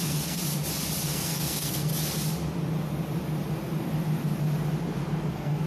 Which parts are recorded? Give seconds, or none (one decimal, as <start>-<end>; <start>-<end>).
0.4-1.0; 1.9-5.3